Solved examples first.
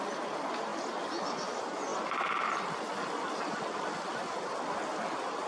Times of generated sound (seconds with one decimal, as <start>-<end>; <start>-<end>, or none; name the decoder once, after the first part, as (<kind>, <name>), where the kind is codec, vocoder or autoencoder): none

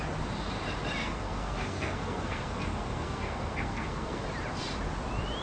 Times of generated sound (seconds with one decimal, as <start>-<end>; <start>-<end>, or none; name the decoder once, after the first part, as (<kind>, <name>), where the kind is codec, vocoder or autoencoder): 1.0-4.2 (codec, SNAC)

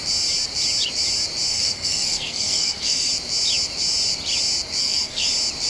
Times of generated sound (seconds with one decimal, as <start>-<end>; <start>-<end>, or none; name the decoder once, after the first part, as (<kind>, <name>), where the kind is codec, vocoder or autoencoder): 1.5-3.1 (codec, SNAC); 4.8-5.3

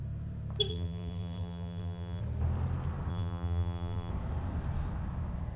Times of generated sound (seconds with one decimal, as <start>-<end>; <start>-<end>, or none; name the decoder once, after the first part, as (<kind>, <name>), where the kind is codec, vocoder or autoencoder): 0.7-2.2 (vocoder, BigVGAN v2); 3.1-4.1

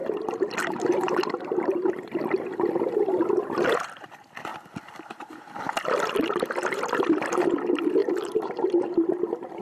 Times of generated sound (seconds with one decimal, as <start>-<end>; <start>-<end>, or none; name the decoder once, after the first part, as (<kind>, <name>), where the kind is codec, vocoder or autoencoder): 0.0-2.9 (vocoder, BigVGAN v2); 8.0-8.8

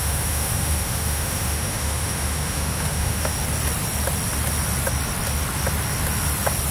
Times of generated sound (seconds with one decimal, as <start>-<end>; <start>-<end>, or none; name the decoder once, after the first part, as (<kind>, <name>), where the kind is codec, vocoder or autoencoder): 0.0-3.3 (autoencoder, DAC-VAE)

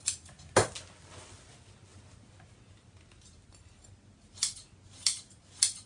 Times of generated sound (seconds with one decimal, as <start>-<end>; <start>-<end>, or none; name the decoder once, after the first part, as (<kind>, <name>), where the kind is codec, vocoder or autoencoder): none